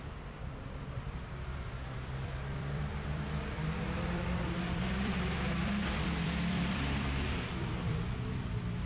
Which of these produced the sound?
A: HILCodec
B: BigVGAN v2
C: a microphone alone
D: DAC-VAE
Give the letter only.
B